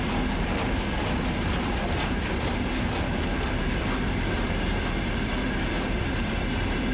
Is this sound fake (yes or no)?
yes